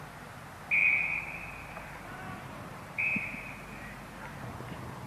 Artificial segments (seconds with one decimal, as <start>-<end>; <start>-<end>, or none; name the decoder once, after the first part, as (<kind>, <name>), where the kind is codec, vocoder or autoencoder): 0.8-3.0 (vocoder, BigVGAN v2)